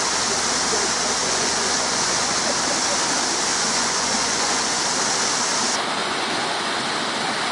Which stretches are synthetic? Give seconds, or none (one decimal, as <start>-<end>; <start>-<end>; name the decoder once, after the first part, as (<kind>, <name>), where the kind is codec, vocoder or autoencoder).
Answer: 1.2-2.4 (vocoder, Vocos); 3.5-4.8; 6.0-6.8